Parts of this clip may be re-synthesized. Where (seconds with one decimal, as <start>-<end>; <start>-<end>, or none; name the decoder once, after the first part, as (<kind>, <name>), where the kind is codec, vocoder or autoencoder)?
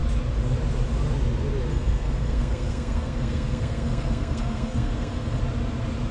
1.7-5.4 (codec, SNAC)